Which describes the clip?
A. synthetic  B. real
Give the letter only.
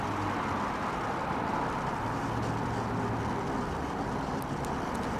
B